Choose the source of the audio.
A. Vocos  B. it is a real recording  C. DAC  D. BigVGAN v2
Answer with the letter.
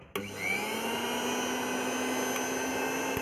B